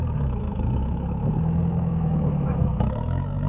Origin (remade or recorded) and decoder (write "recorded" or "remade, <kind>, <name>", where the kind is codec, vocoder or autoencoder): remade, autoencoder, DAC-VAE